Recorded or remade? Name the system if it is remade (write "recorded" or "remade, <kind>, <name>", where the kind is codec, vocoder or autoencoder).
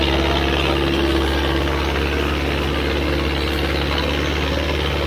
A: recorded